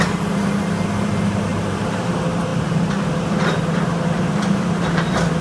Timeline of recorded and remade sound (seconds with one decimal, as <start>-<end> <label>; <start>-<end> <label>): 0.0-1.5 recorded; 1.5-2.1 remade; 2.1-2.5 recorded; 2.5-5.4 remade